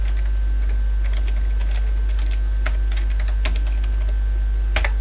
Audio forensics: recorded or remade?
recorded